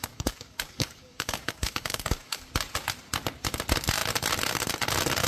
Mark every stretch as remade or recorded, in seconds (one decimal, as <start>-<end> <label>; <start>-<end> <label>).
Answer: 0.0-2.5 remade; 2.5-5.3 recorded